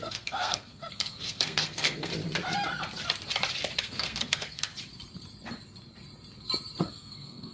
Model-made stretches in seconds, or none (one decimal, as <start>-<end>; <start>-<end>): 0.0-2.1; 3.8-4.7; 6.8-7.5